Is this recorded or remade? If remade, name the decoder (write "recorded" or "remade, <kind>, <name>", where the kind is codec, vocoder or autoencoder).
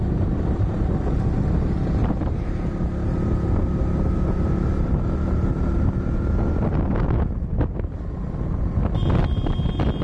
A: recorded